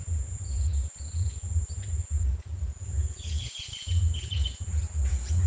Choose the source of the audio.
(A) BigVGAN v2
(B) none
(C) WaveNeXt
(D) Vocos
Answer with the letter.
D